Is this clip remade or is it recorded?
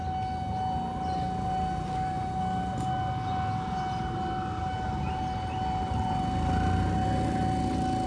recorded